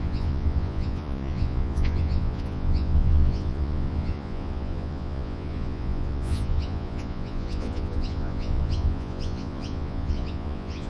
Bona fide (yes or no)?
no